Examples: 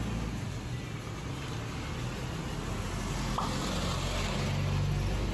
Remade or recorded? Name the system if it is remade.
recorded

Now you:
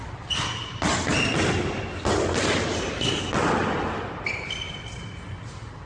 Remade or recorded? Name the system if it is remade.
recorded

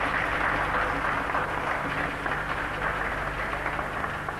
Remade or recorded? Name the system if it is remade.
recorded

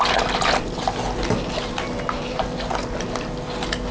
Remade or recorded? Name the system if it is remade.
recorded